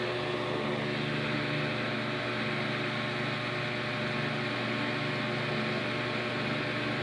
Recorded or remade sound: recorded